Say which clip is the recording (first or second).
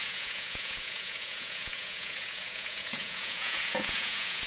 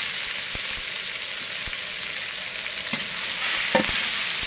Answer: second